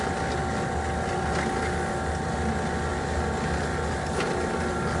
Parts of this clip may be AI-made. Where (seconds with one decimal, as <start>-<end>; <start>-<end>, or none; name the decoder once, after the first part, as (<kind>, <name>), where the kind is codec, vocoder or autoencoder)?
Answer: none